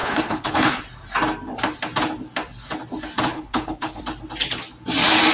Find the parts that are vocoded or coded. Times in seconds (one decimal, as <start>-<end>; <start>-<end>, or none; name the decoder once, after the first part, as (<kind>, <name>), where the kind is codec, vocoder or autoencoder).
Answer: 0.0-0.8 (codec, HILCodec); 3.3-4.0